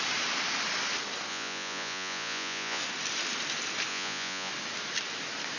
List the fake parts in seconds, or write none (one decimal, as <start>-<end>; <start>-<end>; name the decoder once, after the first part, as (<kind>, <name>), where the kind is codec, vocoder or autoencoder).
1.3-2.8 (vocoder, Vocos); 3.9-4.5

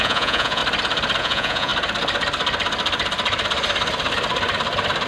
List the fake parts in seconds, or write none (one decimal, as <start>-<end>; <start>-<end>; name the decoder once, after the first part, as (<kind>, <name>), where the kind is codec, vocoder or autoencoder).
0.0-0.6 (vocoder, Vocos); 1.2-1.7